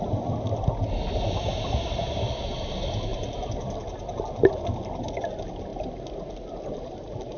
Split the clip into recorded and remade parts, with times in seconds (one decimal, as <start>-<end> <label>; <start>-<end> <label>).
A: 0.0-7.4 recorded